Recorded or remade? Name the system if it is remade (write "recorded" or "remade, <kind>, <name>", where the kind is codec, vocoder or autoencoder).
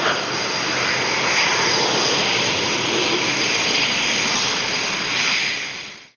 remade, vocoder, BigVGAN v2